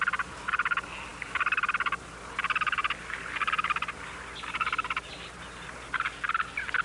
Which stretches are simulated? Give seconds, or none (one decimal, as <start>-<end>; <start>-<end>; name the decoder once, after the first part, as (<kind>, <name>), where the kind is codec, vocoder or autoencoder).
none